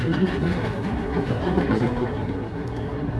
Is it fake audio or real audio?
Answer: fake